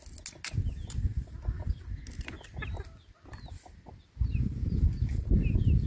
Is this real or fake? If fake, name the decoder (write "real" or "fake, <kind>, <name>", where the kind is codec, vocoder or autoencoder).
real